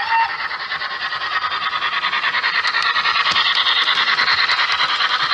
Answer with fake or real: real